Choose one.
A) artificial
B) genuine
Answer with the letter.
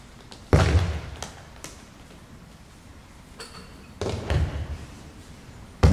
B